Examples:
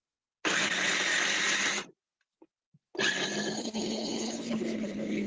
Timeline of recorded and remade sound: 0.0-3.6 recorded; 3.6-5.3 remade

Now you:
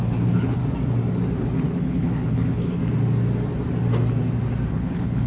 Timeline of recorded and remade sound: 0.0-0.6 remade; 0.6-1.4 recorded; 1.4-2.8 remade; 2.8-4.7 recorded; 4.7-5.3 remade

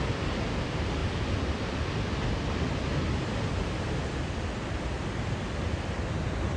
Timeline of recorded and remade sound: 0.0-6.6 recorded